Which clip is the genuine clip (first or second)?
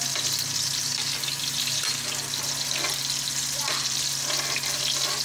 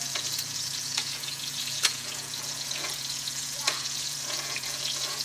first